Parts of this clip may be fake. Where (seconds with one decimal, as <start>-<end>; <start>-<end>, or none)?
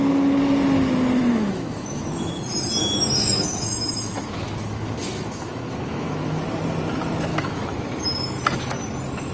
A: 1.2-2.3; 2.8-6.4; 7.3-8.0